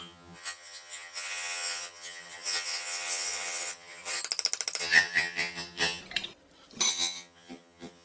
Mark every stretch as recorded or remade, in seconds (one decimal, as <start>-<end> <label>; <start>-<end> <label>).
0.0-4.2 remade; 4.2-4.8 recorded; 4.8-6.0 remade; 6.0-6.9 recorded; 6.9-8.0 remade